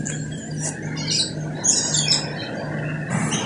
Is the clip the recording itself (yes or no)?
yes